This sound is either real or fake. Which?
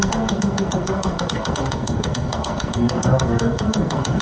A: fake